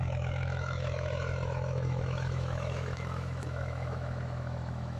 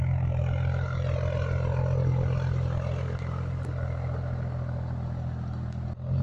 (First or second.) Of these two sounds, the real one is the second